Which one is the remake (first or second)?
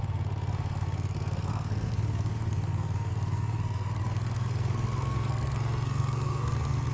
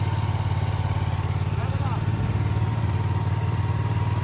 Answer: first